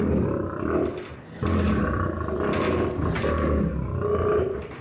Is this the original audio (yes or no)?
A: yes